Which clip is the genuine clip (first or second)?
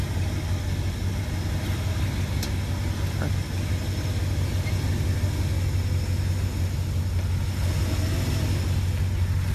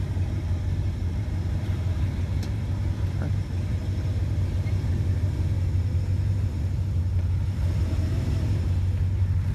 first